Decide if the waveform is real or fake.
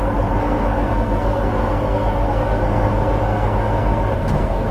fake